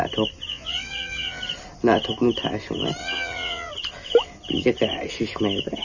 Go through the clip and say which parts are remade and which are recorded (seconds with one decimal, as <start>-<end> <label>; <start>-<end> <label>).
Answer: 0.0-0.5 recorded; 0.5-1.4 remade; 1.4-3.0 recorded; 3.0-3.7 remade; 3.7-5.8 recorded